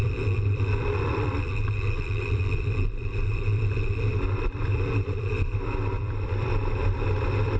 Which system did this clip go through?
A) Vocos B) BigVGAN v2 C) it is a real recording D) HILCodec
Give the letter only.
B